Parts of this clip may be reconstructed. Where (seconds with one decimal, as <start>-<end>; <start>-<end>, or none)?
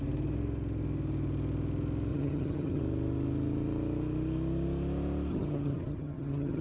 2.1-2.8; 5.3-6.6